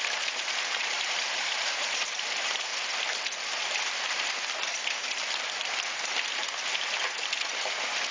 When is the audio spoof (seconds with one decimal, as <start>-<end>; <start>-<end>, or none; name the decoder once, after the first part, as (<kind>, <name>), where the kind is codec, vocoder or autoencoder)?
0.0-2.7 (vocoder, BigVGAN v2); 6.9-8.1